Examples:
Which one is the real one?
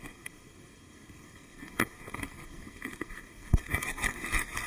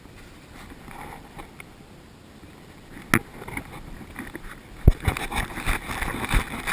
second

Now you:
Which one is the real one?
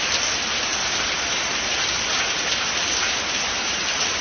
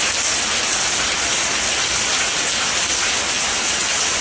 second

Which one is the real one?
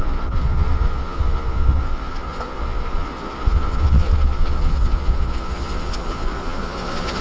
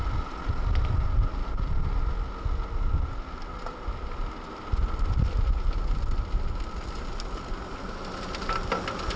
second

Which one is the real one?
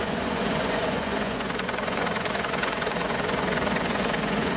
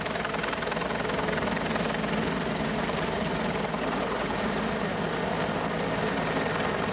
second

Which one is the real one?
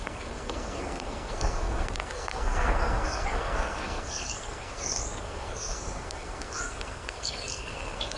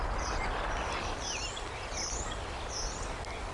second